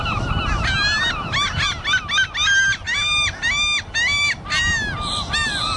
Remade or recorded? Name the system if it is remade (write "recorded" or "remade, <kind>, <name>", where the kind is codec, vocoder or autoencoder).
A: recorded